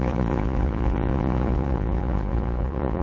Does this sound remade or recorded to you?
remade